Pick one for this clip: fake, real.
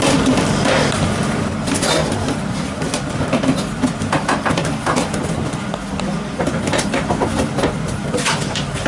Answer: fake